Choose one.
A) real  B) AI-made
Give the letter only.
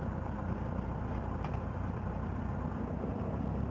A